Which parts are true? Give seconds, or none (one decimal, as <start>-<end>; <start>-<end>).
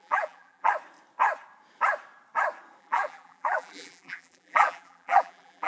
0.7-2.8